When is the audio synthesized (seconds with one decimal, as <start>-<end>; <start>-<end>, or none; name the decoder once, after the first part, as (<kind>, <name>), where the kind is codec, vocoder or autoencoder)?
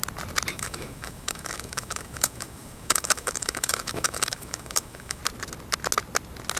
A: 0.5-5.2 (autoencoder, DAC-VAE)